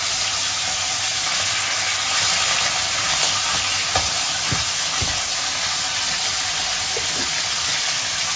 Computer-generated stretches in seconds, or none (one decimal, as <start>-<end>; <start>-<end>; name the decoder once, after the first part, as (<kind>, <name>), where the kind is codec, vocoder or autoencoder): none